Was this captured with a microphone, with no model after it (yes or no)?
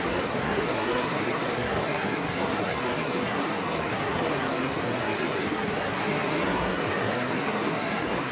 no